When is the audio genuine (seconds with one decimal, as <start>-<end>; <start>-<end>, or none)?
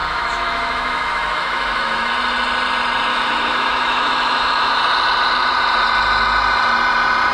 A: 2.1-3.1; 4.8-7.3